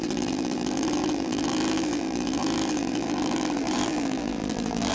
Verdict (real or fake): fake